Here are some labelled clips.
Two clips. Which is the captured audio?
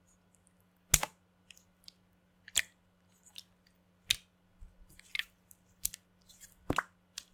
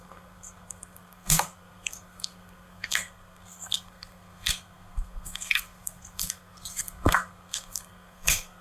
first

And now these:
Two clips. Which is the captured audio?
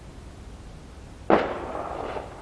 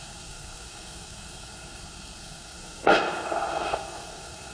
first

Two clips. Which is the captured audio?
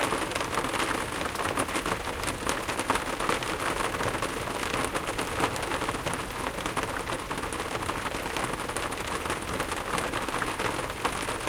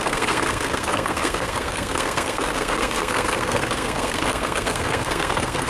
first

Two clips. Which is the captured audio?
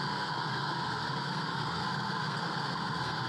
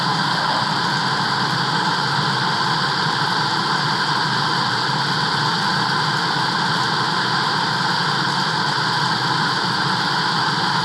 second